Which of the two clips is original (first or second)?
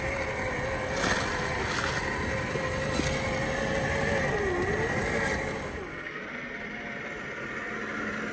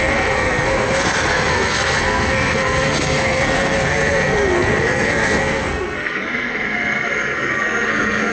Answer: first